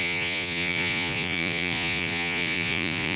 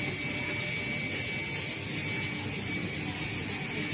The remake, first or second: first